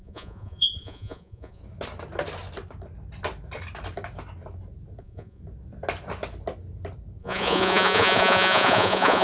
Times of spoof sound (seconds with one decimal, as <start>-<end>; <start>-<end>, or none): 0.0-1.6; 5.0-5.4; 7.2-9.2